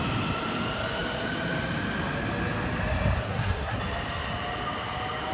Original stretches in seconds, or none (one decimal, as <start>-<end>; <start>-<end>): 0.0-3.2; 3.8-5.3